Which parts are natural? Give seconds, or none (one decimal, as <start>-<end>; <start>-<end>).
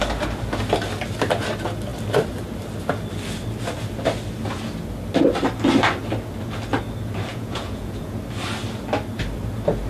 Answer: 0.0-7.3; 8.2-9.9